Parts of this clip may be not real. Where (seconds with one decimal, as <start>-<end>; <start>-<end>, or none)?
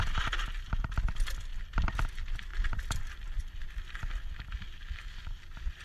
none